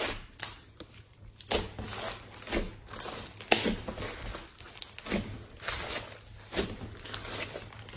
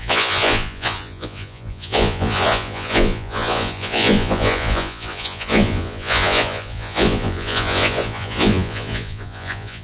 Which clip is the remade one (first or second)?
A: second